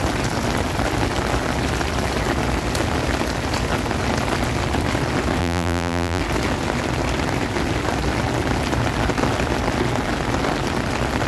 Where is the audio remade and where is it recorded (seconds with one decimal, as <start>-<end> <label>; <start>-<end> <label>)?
0.0-5.4 recorded; 5.4-6.2 remade; 6.2-11.3 recorded